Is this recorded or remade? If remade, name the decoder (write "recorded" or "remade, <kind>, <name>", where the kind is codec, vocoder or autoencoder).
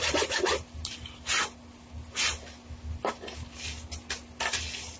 recorded